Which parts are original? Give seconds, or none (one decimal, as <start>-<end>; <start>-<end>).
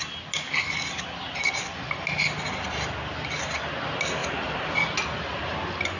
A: 0.0-6.0